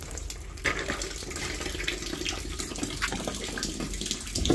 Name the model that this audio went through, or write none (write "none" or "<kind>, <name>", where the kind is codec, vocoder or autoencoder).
none